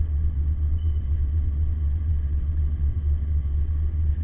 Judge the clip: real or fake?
fake